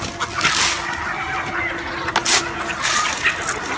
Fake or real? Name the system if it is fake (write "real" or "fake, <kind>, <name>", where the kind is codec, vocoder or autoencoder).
real